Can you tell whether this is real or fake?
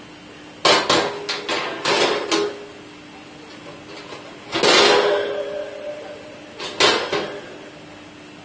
real